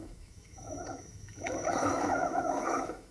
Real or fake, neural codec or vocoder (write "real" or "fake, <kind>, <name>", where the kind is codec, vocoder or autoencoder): fake, autoencoder, DAC-VAE